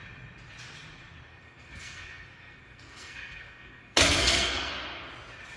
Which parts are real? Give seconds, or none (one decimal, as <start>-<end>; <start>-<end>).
0.0-1.3; 4.7-5.6